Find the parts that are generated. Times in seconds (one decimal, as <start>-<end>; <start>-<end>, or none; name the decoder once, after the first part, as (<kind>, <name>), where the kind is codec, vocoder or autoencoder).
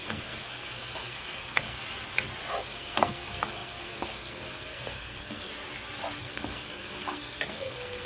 0.0-1.8 (codec, SNAC); 2.6-5.5; 6.2-8.1